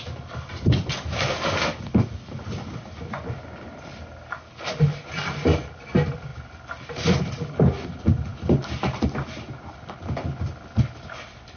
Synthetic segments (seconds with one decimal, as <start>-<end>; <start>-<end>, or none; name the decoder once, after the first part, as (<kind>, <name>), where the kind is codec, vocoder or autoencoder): none